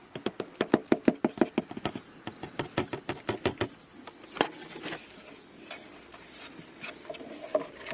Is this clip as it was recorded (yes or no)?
yes